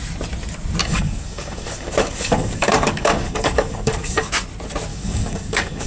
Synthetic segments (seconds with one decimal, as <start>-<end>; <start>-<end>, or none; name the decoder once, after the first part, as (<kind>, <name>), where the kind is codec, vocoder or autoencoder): 0.8-4.3 (codec, DAC); 4.9-5.9